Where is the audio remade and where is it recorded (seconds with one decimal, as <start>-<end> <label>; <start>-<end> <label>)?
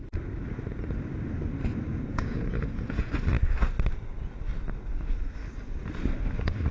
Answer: 0.0-1.9 recorded; 1.9-3.1 remade; 3.1-6.7 recorded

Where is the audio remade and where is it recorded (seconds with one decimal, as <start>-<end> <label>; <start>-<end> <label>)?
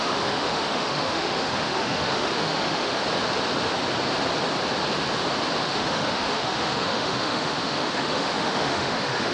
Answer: 0.0-3.0 remade; 3.0-5.6 recorded; 5.6-9.3 remade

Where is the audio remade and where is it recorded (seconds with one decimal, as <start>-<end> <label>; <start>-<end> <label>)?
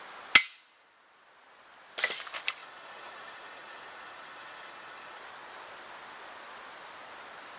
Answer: 0.0-2.6 recorded; 2.6-5.2 remade; 5.2-7.6 recorded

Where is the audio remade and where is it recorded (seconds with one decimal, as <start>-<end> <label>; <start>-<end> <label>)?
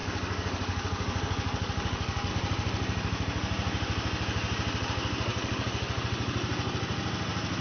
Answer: 0.0-2.3 remade; 2.3-5.3 recorded; 5.3-6.0 remade; 6.0-7.6 recorded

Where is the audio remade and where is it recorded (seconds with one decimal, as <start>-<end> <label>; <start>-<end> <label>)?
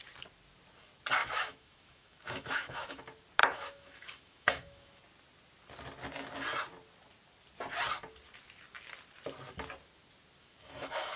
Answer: 0.0-1.2 recorded; 1.2-3.0 remade; 3.0-3.4 recorded; 3.4-5.0 remade; 5.0-10.4 recorded; 10.4-11.2 remade